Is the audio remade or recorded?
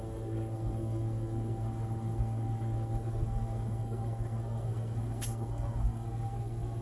remade